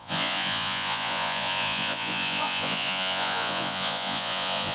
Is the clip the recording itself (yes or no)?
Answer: no